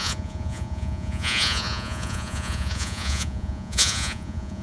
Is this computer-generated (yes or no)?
yes